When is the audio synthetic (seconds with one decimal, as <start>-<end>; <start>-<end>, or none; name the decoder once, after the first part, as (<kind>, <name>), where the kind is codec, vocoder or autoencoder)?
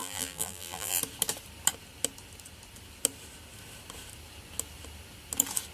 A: 0.0-1.0 (vocoder, BigVGAN v2)